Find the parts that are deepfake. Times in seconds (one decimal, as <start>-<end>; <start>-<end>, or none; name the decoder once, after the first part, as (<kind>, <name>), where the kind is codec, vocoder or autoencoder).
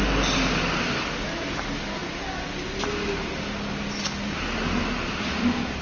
none